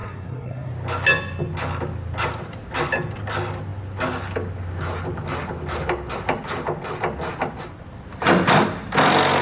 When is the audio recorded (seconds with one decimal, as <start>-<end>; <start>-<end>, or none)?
0.7-9.4